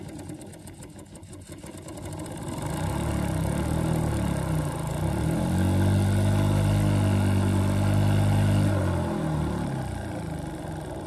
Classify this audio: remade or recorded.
recorded